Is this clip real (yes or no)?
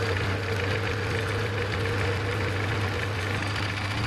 yes